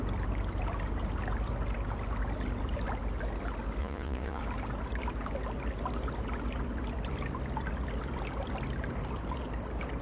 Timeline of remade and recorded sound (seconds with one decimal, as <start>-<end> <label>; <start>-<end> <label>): 0.0-3.8 recorded; 3.8-4.4 remade; 4.4-10.0 recorded